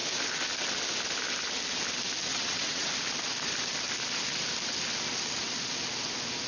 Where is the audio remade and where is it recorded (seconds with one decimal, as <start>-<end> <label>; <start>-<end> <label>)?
0.0-2.3 recorded; 2.3-2.9 remade; 2.9-6.5 recorded